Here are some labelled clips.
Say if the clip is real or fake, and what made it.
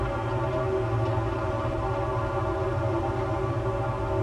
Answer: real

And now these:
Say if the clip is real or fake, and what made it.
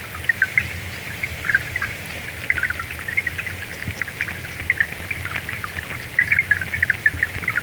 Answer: real